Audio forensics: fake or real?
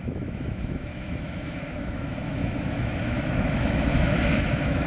fake